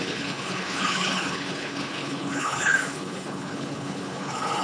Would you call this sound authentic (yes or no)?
no